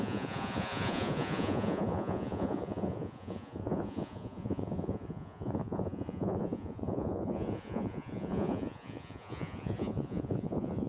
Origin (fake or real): fake